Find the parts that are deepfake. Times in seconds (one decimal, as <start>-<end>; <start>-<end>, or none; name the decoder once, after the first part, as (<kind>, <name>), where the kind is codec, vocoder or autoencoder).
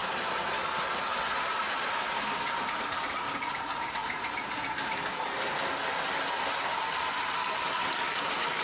none